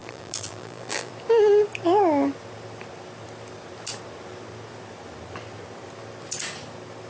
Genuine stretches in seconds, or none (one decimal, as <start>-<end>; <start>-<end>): 1.1-7.1